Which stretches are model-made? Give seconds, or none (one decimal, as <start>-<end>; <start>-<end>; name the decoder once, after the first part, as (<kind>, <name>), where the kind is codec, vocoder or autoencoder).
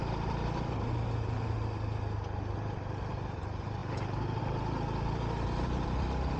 none